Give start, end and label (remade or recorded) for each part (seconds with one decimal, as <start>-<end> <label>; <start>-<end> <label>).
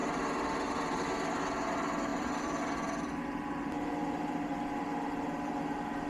0.0-1.0 remade; 1.0-2.1 recorded; 2.1-2.6 remade; 2.6-4.0 recorded; 4.0-4.6 remade; 4.6-6.1 recorded